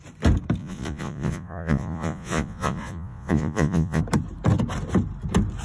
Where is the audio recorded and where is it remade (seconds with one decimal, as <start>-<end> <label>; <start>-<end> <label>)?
0.0-0.6 recorded; 0.6-4.0 remade; 4.0-5.6 recorded